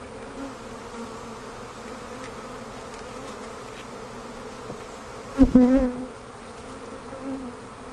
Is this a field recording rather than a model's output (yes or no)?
yes